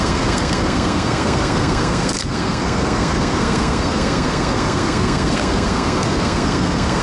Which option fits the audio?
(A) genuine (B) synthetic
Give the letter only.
B